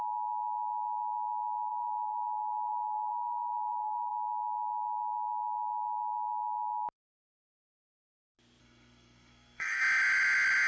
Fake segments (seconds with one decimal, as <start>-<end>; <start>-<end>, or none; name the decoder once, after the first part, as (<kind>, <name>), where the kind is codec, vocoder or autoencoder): 1.7-4.1 (codec, SNAC); 8.6-9.8